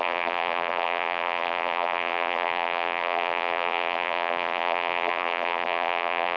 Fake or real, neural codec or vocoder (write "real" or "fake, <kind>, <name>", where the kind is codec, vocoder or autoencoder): fake, vocoder, BigVGAN v2